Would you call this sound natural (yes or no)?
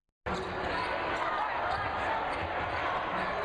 yes